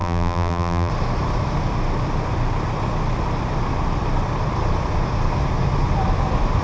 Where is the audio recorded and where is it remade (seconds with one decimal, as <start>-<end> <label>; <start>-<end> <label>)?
0.0-0.9 remade; 0.9-6.6 recorded